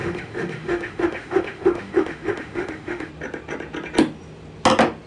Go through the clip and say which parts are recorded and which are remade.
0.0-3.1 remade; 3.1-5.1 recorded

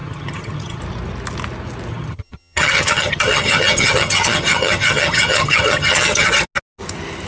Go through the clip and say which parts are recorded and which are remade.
0.0-0.8 remade; 0.8-1.9 recorded; 1.9-6.3 remade; 6.3-7.3 recorded

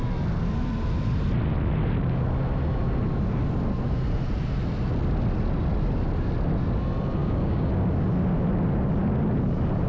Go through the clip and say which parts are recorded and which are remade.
0.0-7.2 recorded; 7.2-7.7 remade; 7.7-9.9 recorded

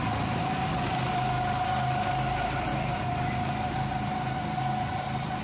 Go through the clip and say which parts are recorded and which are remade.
0.0-2.7 recorded; 2.7-4.1 remade; 4.1-5.4 recorded

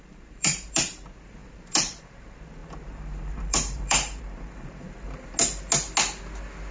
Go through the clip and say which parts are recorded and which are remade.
0.0-5.3 remade; 5.3-6.7 recorded

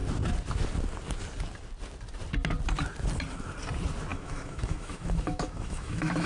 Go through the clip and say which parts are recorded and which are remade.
0.0-4.1 recorded; 4.1-6.3 remade

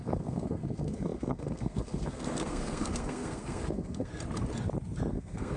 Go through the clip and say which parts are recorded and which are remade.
0.0-4.1 remade; 4.1-5.1 recorded; 5.1-5.6 remade